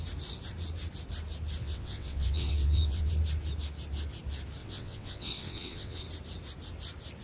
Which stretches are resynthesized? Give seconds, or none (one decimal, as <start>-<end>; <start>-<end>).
1.6-3.1; 4.6-6.0